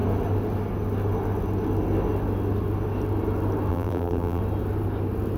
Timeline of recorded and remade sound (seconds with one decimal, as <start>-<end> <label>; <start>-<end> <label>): 0.0-3.7 recorded; 3.7-4.4 remade; 4.4-5.4 recorded